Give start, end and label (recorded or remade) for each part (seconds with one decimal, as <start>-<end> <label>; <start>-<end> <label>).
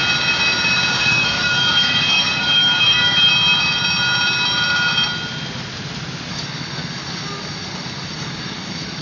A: 0.0-0.9 recorded; 0.9-3.3 remade; 3.3-6.3 recorded; 6.3-9.0 remade